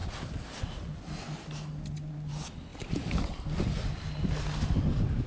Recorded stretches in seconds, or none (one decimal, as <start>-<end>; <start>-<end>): 0.0-5.3